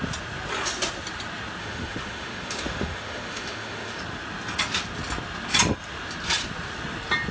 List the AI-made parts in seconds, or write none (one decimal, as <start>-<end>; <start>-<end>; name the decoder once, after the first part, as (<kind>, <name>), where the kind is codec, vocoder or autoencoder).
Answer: 1.6-4.0 (autoencoder, DAC-VAE)